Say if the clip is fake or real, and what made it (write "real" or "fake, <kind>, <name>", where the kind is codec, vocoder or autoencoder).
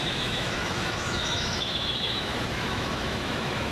fake, autoencoder, DAC-VAE